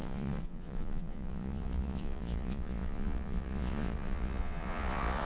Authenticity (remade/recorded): remade